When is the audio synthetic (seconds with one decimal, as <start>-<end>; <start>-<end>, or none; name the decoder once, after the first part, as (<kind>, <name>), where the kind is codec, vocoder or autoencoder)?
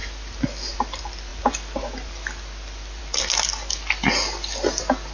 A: none